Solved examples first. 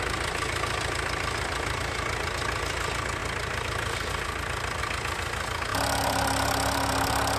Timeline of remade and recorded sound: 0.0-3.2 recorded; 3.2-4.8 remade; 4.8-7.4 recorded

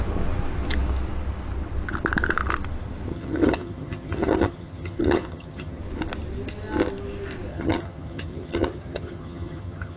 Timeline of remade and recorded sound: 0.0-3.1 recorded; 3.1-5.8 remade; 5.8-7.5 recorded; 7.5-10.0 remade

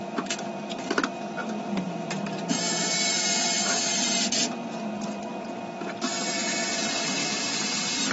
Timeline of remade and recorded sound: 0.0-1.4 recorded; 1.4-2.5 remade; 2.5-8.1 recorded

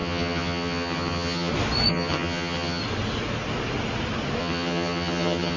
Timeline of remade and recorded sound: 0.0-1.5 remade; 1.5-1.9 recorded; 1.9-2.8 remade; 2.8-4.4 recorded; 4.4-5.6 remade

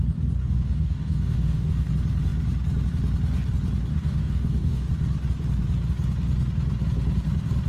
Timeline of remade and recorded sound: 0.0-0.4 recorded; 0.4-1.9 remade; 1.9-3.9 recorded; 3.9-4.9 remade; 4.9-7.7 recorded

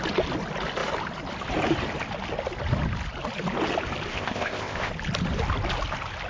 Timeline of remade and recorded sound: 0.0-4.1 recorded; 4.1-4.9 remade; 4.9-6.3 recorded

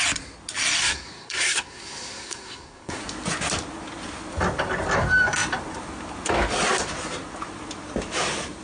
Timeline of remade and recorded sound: 0.0-0.8 recorded; 0.8-3.0 remade; 3.0-8.6 recorded